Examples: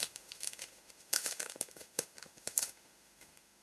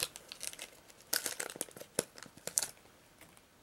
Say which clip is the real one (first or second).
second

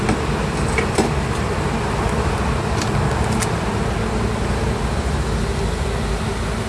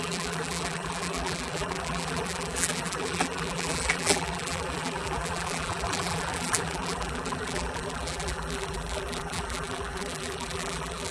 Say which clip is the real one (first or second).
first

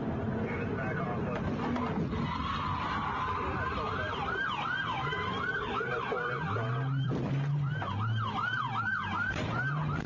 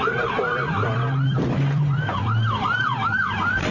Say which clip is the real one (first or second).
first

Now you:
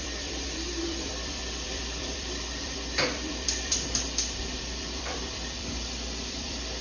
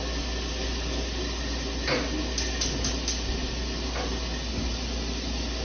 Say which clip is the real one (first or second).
second